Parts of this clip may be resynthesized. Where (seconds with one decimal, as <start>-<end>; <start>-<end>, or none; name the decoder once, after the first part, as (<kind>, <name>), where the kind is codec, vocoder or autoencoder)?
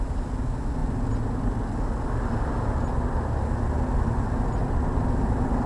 none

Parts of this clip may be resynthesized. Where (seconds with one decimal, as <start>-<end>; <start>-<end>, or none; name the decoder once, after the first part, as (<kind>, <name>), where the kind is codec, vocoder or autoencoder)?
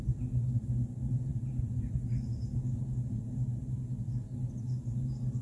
none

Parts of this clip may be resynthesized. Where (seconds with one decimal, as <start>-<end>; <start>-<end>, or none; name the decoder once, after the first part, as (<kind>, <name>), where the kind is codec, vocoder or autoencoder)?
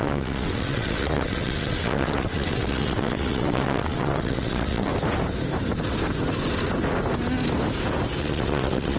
0.0-4.9 (vocoder, WaveNeXt); 8.2-9.0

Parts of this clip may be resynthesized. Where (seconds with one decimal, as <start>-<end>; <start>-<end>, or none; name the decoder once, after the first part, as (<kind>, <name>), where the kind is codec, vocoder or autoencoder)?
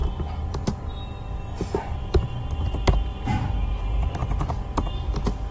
1.6-4.2 (vocoder, BigVGAN v2); 4.9-5.5